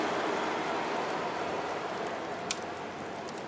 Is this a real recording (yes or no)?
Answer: yes